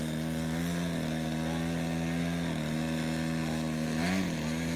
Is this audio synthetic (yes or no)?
no